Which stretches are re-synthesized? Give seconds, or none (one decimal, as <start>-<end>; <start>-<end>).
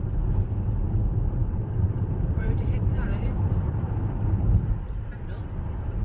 1.4-5.0